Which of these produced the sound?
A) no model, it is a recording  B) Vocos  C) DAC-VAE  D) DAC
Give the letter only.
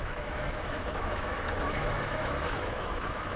C